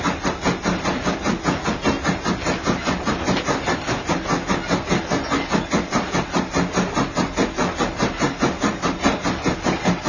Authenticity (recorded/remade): recorded